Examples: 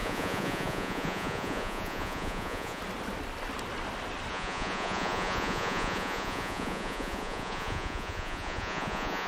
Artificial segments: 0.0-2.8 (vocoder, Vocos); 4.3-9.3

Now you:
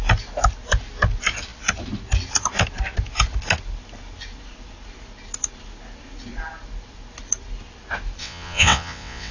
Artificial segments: 8.2-9.3 (vocoder, WaveNeXt)